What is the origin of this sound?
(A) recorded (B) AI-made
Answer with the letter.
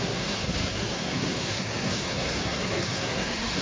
B